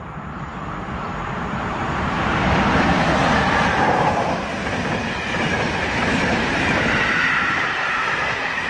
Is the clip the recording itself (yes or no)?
no